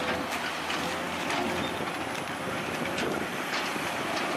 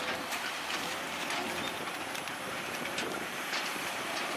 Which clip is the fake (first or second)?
second